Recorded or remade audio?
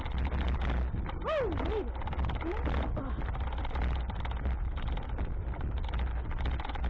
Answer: recorded